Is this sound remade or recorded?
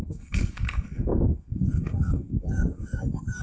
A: remade